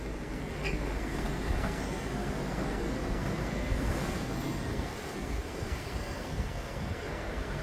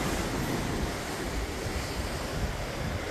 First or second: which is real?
second